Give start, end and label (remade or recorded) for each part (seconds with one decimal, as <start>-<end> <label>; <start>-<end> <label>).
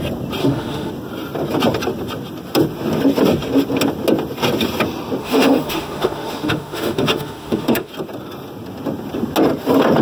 0.0-0.4 recorded; 0.4-0.9 remade; 0.9-5.2 recorded; 5.2-7.9 remade; 7.9-10.0 recorded